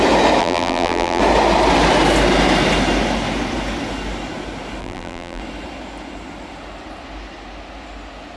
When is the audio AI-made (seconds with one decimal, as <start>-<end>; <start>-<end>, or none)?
0.4-1.2; 4.8-5.4